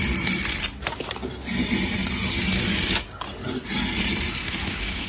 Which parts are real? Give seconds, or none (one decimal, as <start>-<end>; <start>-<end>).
0.0-4.4